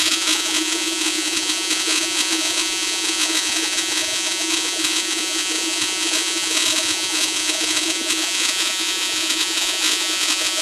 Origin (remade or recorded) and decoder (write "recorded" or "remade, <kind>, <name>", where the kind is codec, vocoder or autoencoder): remade, vocoder, Vocos